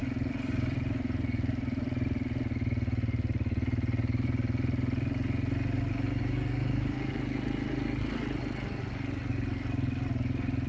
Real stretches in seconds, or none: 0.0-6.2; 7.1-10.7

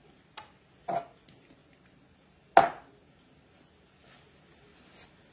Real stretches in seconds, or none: 0.0-5.3

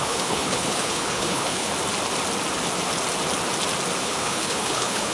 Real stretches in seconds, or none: 1.7-4.0

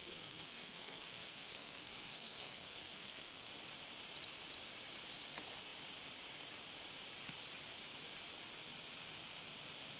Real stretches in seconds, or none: 3.5-10.0

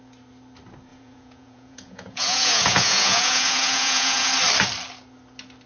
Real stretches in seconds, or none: 0.0-0.9; 4.3-5.7

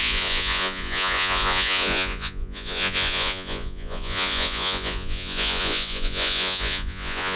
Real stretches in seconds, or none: none

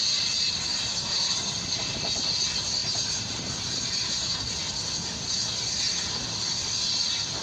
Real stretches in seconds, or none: 0.0-0.7; 2.2-2.8; 4.4-7.4